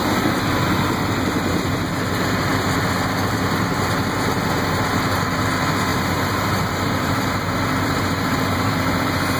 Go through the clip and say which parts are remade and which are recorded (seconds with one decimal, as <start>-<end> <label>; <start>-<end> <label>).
0.0-5.9 recorded; 5.9-7.2 remade; 7.2-9.4 recorded